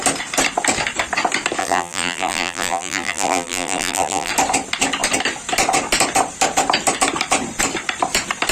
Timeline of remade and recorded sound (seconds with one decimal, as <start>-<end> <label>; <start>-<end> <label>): 0.0-1.6 recorded; 1.6-4.3 remade; 4.3-8.5 recorded